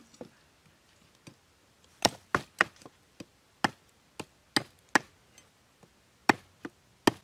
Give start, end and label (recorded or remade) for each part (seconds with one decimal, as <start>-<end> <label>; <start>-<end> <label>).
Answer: 0.0-7.2 recorded